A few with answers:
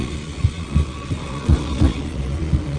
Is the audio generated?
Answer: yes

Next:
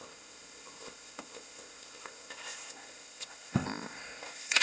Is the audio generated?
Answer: yes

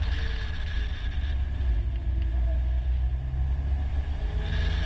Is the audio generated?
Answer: no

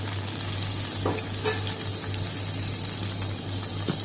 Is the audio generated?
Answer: no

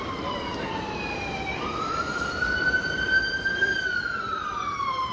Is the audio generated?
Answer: yes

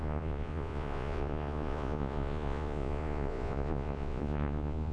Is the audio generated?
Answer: yes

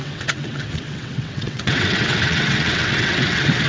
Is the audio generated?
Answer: yes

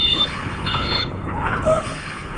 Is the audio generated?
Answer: yes